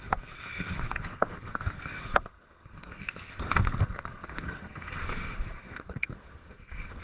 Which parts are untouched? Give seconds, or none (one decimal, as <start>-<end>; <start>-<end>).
none